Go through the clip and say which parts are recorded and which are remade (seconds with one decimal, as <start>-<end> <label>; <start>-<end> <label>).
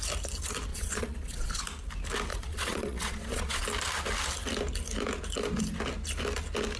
0.0-0.7 recorded; 0.7-1.6 remade; 1.6-2.3 recorded; 2.3-3.6 remade; 3.6-6.8 recorded